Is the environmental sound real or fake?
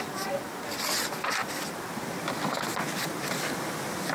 real